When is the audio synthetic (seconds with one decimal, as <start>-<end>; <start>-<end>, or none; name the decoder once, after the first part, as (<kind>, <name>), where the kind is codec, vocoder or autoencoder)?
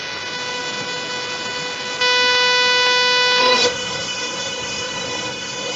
3.4-5.8 (codec, SNAC)